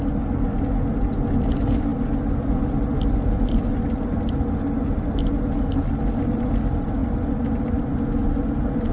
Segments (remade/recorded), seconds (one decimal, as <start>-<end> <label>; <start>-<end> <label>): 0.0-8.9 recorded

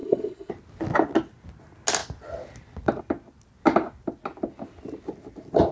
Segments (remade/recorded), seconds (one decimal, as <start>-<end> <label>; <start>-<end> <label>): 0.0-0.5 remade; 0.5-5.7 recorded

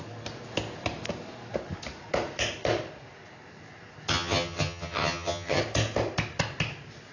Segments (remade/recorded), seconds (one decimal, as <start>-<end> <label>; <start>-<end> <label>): 0.0-4.1 recorded; 4.1-5.6 remade; 5.6-7.1 recorded